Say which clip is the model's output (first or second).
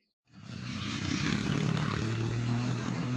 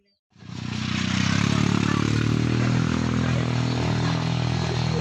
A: first